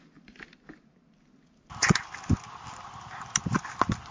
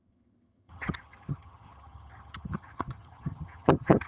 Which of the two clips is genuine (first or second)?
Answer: first